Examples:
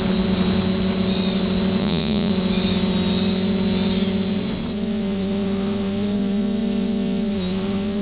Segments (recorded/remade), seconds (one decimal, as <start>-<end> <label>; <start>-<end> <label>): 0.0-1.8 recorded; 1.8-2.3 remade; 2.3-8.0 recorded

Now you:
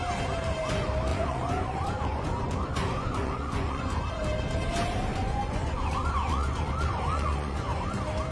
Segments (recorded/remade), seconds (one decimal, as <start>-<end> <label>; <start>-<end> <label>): 0.0-1.1 recorded; 1.1-4.0 remade; 4.0-5.1 recorded; 5.1-7.9 remade; 7.9-8.3 recorded

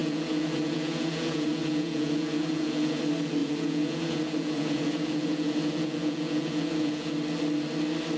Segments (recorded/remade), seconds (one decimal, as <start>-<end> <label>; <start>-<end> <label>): 0.0-3.0 remade; 3.0-3.4 recorded; 3.4-7.1 remade; 7.1-8.2 recorded

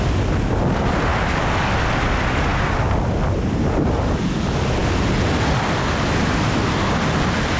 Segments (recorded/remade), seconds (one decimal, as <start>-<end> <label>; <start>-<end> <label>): 0.0-7.6 recorded

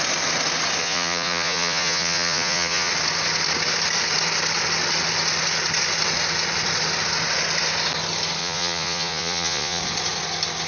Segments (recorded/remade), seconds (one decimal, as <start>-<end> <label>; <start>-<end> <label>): 0.0-0.8 recorded; 0.8-2.9 remade; 2.9-8.4 recorded; 8.4-9.8 remade; 9.8-10.7 recorded